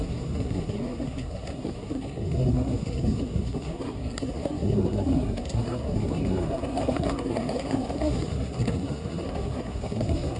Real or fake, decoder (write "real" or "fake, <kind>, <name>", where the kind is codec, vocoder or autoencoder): fake, codec, SNAC